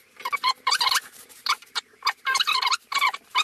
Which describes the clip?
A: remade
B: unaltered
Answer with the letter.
A